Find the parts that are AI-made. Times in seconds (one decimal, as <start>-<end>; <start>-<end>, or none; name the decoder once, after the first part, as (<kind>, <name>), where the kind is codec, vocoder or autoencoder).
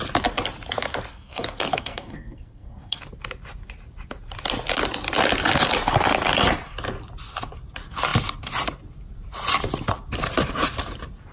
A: 1.1-3.0 (codec, SNAC)